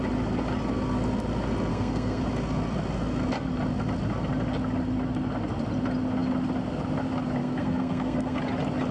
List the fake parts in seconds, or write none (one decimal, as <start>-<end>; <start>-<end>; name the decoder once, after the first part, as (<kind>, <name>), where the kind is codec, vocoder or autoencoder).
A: 1.7-2.2 (codec, SNAC); 7.4-8.4